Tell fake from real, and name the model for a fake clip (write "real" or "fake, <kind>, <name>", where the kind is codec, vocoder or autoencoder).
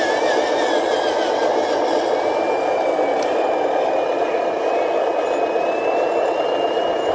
real